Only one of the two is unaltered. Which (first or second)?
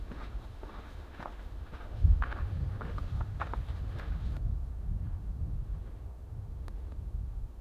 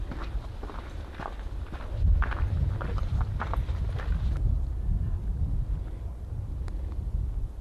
second